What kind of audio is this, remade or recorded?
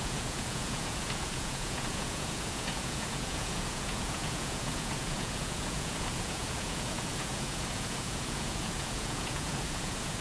remade